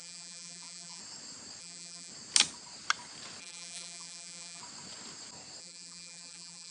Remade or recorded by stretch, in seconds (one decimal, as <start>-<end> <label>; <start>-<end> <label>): 0.0-1.0 remade; 1.0-1.6 recorded; 1.6-2.1 remade; 2.1-3.4 recorded; 3.4-4.6 remade; 4.6-5.6 recorded; 5.6-6.7 remade